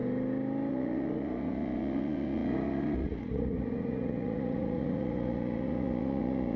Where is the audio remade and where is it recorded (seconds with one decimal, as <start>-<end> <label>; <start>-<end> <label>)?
0.0-0.7 recorded; 0.7-6.6 remade